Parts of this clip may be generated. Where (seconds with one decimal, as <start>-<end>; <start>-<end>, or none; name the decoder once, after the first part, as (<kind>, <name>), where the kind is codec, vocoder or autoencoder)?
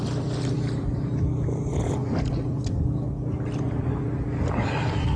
0.0-2.0 (vocoder, BigVGAN v2); 3.6-5.2